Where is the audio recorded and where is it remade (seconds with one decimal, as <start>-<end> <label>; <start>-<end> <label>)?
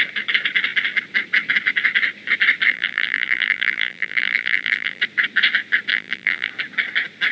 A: 0.0-2.7 recorded; 2.7-5.0 remade; 5.0-5.9 recorded; 5.9-6.5 remade; 6.5-7.3 recorded